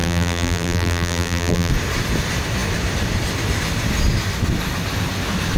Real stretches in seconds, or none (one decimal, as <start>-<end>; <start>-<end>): 1.7-5.6